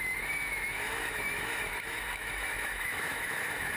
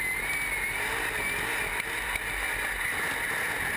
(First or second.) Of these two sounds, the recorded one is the second